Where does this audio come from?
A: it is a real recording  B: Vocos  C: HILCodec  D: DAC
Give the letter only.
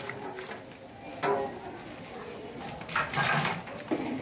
A